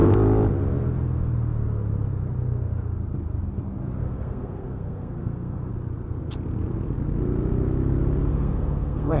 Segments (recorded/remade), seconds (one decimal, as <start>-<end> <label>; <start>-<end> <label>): 0.0-4.0 recorded; 4.0-5.7 remade; 5.7-8.3 recorded; 8.3-9.2 remade

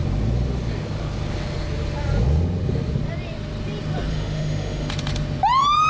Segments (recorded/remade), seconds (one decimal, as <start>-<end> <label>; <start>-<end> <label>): 0.0-4.1 recorded; 4.1-4.9 remade; 4.9-5.9 recorded